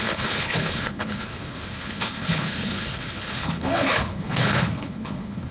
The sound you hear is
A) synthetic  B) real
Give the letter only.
A